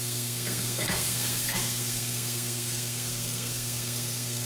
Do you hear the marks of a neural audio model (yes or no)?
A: yes